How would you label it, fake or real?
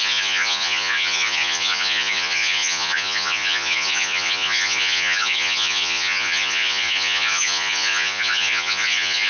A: fake